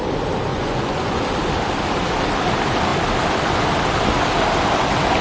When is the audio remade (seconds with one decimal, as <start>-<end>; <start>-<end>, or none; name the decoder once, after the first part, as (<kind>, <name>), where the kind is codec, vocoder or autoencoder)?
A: 0.5-1.2 (vocoder, Vocos)